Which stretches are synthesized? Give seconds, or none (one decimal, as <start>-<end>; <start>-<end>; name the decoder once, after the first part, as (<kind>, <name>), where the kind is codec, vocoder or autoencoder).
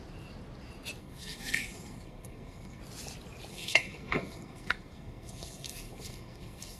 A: 1.0-2.8 (codec, SNAC); 3.5-6.8